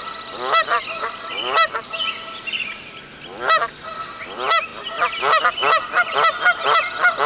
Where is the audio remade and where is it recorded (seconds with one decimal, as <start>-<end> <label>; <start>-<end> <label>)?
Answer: 0.0-7.3 recorded